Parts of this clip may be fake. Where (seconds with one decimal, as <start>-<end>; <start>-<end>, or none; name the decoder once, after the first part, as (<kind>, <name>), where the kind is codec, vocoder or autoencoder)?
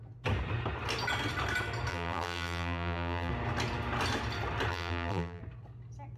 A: 1.9-3.3 (vocoder, BigVGAN v2); 4.7-5.4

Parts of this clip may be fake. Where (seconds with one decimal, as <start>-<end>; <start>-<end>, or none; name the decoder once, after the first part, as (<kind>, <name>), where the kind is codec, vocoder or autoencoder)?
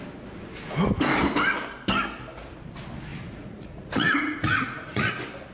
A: 3.1-5.1 (vocoder, Vocos)